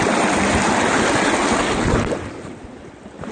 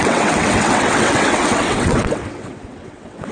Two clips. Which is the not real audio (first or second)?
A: second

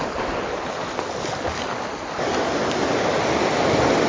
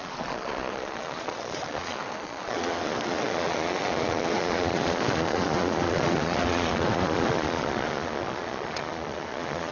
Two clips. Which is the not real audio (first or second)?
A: second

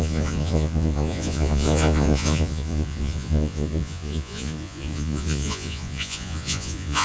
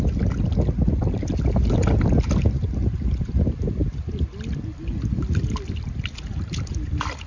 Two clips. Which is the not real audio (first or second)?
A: first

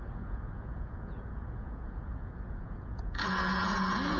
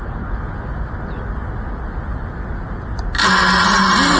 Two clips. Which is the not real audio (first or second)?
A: first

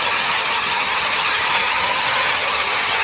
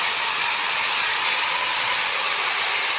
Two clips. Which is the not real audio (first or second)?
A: first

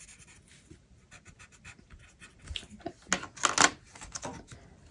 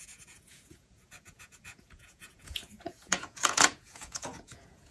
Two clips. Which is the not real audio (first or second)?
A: second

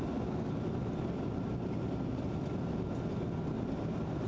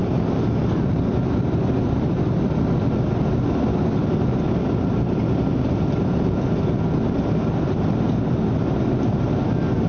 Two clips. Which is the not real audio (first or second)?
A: second